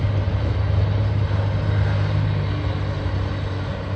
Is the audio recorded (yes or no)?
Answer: yes